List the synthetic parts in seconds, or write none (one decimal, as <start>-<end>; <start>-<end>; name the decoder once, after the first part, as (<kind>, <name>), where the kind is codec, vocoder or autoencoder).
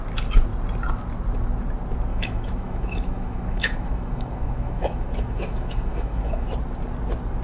2.1-6.5 (autoencoder, DAC-VAE)